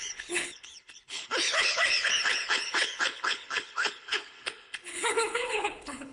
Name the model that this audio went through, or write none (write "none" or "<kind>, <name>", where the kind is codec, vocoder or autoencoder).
codec, HILCodec